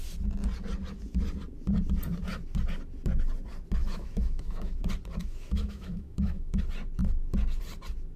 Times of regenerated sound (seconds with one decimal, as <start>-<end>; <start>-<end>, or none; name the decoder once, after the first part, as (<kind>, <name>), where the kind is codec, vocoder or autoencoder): 3.8-4.8 (autoencoder, DAC-VAE); 5.2-6.6